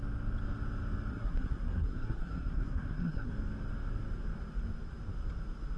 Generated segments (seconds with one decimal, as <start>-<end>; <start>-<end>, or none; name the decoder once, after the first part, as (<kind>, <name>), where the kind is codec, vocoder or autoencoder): 1.1-3.3 (codec, SNAC)